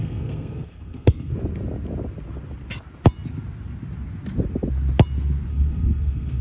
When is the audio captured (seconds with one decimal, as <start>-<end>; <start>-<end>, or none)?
1.3-5.5